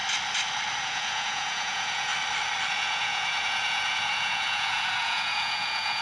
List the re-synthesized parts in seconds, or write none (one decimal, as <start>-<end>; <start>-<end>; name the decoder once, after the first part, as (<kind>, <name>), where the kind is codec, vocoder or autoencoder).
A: 0.8-2.1 (vocoder, Vocos); 2.7-6.0

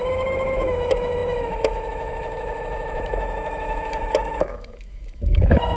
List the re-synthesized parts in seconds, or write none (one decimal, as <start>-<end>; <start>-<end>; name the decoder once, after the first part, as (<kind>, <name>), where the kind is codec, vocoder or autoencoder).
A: 0.0-5.8 (autoencoder, DAC-VAE)